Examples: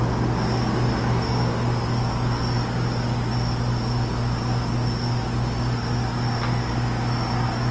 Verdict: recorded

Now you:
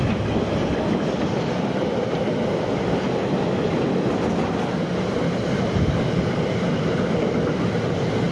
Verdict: recorded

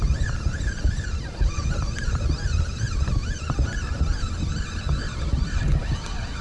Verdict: recorded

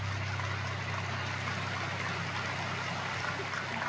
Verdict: recorded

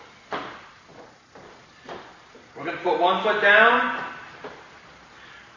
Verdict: recorded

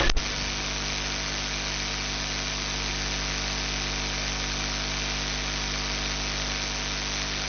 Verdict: recorded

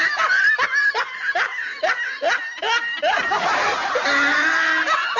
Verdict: recorded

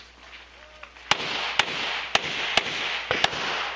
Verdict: recorded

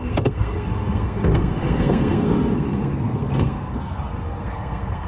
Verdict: remade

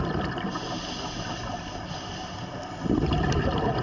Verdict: recorded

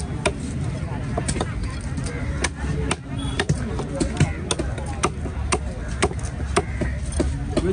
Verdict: recorded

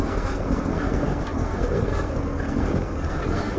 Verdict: remade